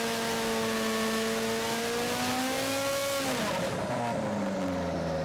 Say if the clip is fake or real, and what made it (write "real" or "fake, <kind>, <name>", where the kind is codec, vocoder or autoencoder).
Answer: real